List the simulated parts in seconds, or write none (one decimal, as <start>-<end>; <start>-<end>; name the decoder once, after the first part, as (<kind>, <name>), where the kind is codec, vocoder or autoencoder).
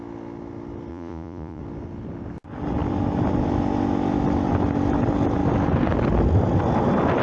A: 0.9-1.6 (vocoder, Vocos)